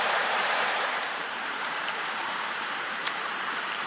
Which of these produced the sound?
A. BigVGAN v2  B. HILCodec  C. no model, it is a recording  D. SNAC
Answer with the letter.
A